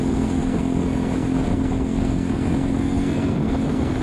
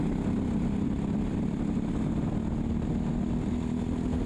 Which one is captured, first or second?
second